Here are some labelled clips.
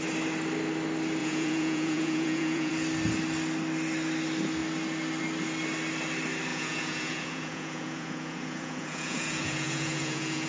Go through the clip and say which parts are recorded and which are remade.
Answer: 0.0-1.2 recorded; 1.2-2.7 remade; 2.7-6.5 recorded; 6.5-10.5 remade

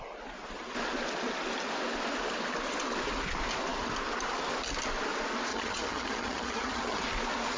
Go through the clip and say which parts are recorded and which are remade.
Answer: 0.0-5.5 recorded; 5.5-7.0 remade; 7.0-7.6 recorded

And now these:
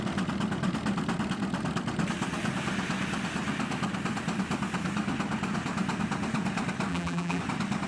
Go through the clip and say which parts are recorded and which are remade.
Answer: 0.0-6.9 recorded; 6.9-7.4 remade; 7.4-7.9 recorded

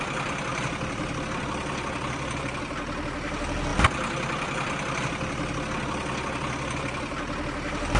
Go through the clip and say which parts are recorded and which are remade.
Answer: 0.0-0.5 recorded; 0.5-2.6 remade; 2.6-8.0 recorded

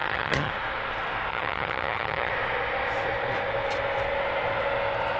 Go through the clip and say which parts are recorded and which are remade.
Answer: 0.0-0.5 remade; 0.5-1.3 recorded; 1.3-2.3 remade; 2.3-5.2 recorded

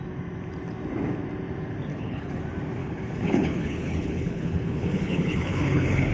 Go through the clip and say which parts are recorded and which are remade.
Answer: 0.0-1.9 recorded; 1.9-2.4 remade; 2.4-2.8 recorded; 2.8-6.1 remade